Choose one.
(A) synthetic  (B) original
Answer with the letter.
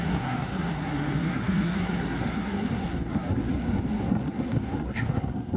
A